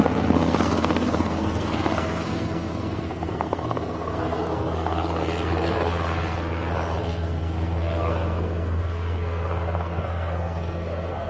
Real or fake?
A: fake